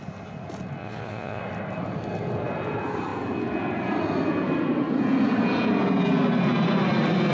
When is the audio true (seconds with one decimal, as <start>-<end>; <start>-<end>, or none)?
0.0-0.8; 1.4-7.3